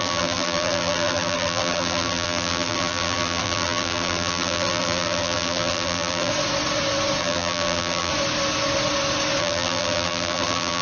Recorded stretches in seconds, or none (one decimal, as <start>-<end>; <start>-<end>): 6.3-7.2; 8.1-9.4